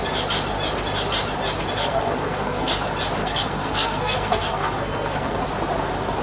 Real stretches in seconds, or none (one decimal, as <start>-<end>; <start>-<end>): 0.0-1.8; 2.7-3.2; 5.4-6.2